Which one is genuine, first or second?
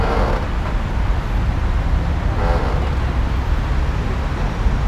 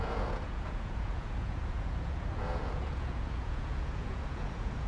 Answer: first